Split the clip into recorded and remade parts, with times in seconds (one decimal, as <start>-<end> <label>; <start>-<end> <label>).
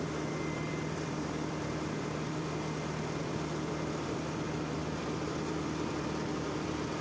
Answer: 0.0-7.0 remade